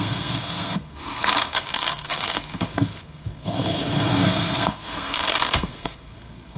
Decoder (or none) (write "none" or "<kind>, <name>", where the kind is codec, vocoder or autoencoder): codec, SNAC